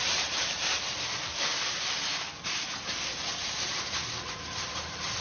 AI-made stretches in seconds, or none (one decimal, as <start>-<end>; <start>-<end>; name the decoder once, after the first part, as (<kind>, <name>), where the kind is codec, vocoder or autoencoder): 0.0-1.5 (vocoder, BigVGAN v2); 4.6-5.2